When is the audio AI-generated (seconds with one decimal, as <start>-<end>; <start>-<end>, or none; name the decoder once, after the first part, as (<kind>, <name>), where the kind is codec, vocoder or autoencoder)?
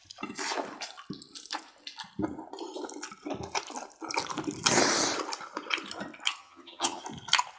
6.4-7.0 (vocoder, HiFi-GAN)